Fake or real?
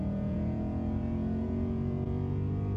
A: fake